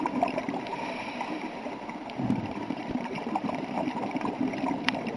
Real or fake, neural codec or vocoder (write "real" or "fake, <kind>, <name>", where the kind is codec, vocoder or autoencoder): fake, vocoder, BigVGAN v2